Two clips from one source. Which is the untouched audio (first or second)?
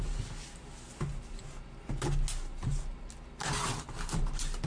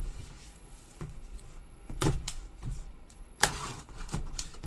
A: first